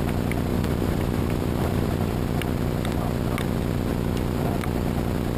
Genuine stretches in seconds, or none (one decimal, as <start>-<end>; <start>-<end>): 0.0-0.5; 2.1-5.4